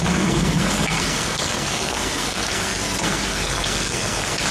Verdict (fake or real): fake